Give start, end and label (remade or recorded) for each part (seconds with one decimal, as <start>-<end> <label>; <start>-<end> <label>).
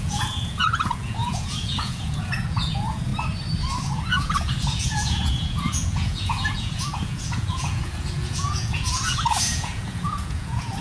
0.0-3.1 remade; 3.1-4.0 recorded; 4.0-10.8 remade